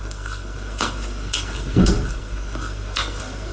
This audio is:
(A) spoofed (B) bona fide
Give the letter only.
A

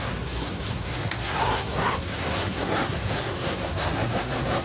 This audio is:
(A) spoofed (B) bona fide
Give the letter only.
A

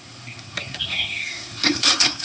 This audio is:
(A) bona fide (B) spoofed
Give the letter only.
B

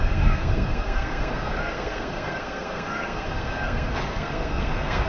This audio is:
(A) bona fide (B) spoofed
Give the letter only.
B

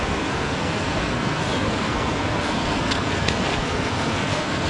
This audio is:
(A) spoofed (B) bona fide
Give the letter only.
A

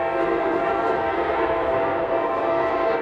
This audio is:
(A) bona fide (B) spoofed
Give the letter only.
B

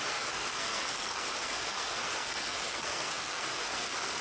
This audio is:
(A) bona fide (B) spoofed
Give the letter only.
B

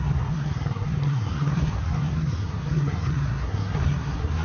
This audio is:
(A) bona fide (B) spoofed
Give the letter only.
B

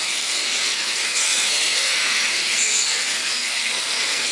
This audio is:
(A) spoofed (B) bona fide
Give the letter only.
A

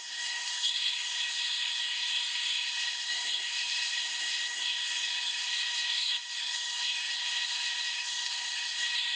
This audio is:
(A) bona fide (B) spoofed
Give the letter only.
B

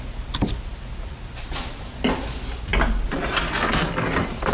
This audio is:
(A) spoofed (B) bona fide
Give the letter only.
B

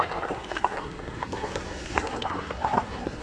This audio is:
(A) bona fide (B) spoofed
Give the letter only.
B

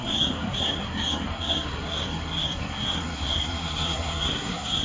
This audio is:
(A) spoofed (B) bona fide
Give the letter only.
A